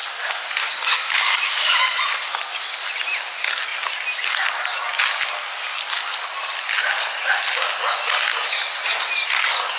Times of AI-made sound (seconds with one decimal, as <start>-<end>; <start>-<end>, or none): 0.9-1.8